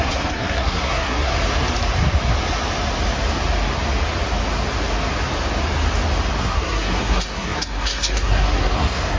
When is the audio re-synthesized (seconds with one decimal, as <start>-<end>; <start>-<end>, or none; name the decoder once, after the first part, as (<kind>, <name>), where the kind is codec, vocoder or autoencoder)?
0.0-1.3 (codec, SNAC); 6.4-9.2

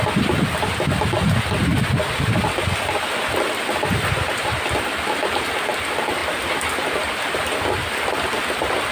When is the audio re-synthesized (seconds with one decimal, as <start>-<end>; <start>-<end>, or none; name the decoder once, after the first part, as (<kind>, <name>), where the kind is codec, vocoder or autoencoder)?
0.0-1.7 (vocoder, BigVGAN v2); 2.3-6.2; 8.0-8.9